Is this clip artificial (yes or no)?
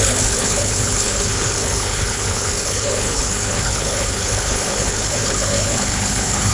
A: yes